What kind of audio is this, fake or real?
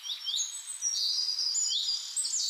real